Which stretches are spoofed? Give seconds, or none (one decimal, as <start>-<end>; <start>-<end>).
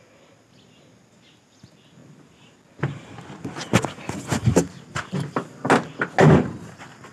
none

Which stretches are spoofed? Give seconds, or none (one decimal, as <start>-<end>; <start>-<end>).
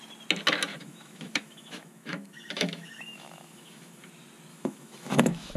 0.7-4.1; 4.5-5.6